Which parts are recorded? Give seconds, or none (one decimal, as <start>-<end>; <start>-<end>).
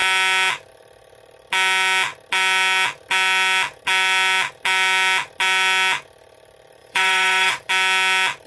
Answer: 0.0-6.8; 7.7-8.5